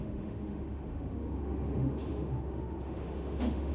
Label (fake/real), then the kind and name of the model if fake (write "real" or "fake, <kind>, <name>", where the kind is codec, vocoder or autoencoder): fake, autoencoder, DAC-VAE